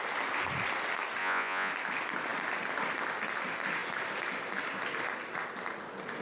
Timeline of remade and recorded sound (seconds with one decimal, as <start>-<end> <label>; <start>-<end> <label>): 0.0-1.2 recorded; 1.2-1.7 remade; 1.7-6.2 recorded